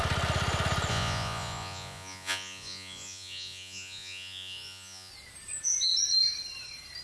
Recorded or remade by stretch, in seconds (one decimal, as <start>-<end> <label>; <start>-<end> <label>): 0.0-0.9 recorded; 0.9-5.1 remade; 5.1-7.0 recorded